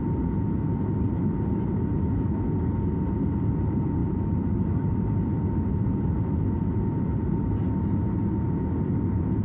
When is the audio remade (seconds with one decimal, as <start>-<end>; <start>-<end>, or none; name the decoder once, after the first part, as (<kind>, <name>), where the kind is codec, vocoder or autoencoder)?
4.0-5.1 (vocoder, BigVGAN v2)